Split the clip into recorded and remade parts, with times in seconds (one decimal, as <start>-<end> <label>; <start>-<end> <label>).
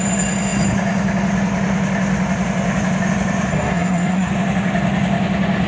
0.0-3.5 recorded; 3.5-4.3 remade; 4.3-5.7 recorded